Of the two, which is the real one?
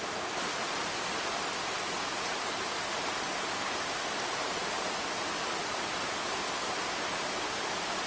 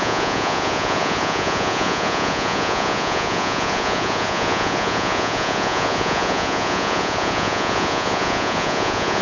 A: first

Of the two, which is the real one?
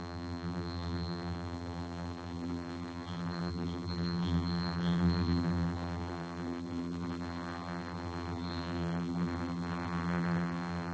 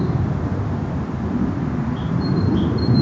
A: second